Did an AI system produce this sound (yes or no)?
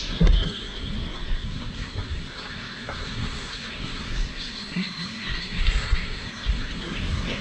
yes